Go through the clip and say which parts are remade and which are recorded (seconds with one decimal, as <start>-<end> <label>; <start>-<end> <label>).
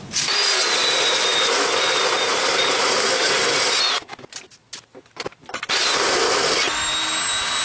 0.0-7.6 recorded